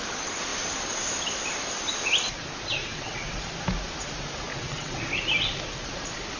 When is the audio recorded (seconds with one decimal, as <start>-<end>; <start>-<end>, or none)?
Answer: 0.0-2.8; 3.4-4.5; 5.0-6.4